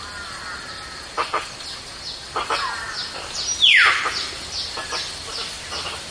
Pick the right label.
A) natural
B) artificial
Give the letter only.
A